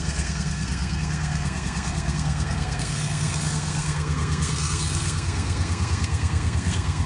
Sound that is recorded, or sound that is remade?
remade